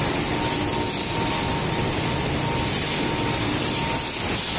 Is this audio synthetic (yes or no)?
no